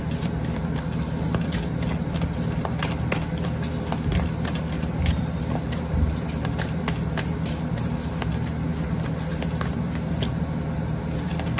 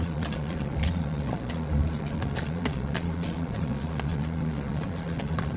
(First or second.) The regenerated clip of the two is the second